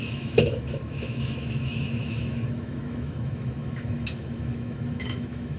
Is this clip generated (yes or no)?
yes